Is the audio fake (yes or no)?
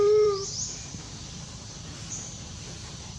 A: yes